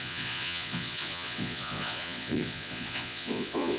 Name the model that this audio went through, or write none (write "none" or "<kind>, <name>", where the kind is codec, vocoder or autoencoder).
vocoder, Vocos